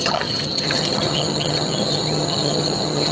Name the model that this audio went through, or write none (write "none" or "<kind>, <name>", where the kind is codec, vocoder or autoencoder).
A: vocoder, HiFi-GAN